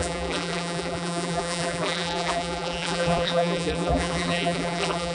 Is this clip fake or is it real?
fake